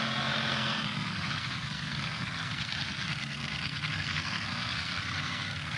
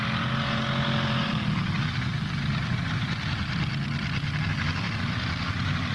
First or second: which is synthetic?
first